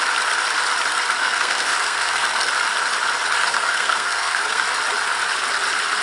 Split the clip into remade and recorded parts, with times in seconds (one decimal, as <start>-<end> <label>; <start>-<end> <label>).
0.0-1.2 recorded; 1.2-2.5 remade; 2.5-3.4 recorded; 3.4-4.6 remade; 4.6-6.0 recorded